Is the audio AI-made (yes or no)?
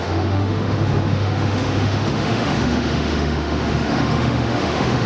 yes